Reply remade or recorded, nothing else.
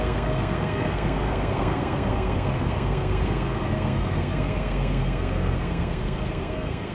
remade